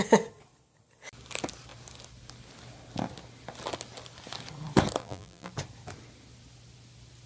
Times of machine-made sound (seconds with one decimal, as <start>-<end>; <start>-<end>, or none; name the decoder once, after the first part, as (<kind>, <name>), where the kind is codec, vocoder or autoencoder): 5.0-5.5 (vocoder, BigVGAN v2)